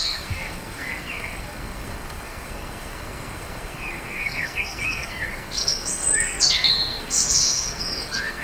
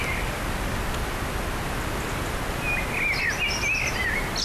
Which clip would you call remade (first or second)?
first